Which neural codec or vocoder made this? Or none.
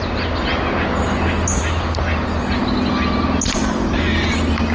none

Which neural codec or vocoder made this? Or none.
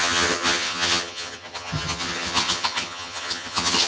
vocoder, HiFi-GAN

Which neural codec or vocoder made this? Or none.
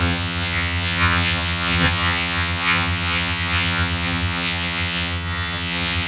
vocoder, HiFi-GAN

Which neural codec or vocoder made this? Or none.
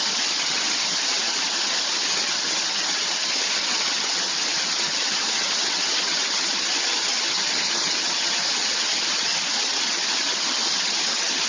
vocoder, HiFi-GAN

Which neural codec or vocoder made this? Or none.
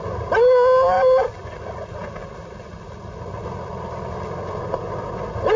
none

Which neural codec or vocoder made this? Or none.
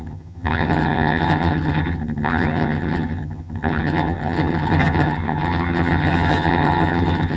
vocoder, HiFi-GAN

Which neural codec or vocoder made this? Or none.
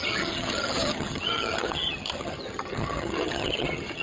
vocoder, HiFi-GAN